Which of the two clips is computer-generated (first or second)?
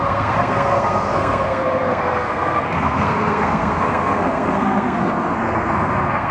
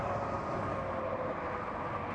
first